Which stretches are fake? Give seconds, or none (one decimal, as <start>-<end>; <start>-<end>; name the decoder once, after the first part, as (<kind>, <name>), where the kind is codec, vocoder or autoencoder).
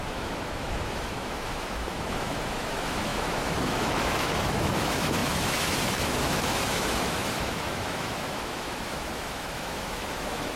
0.0-10.6 (autoencoder, DAC-VAE)